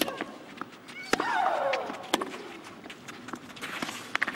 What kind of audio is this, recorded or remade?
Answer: recorded